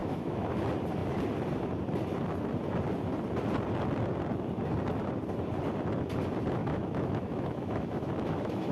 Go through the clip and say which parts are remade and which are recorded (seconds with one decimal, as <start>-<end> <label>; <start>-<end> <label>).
0.0-0.6 remade; 0.6-6.6 recorded; 6.6-8.7 remade